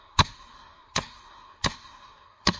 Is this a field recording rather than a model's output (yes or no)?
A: no